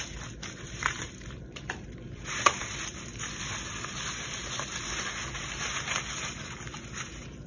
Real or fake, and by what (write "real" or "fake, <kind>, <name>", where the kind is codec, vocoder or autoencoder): fake, vocoder, BigVGAN v2